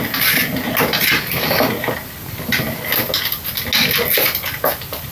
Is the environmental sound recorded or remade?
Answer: recorded